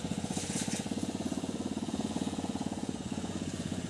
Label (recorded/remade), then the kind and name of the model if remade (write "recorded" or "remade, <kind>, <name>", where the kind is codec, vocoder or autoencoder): remade, vocoder, Vocos